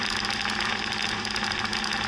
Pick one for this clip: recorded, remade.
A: recorded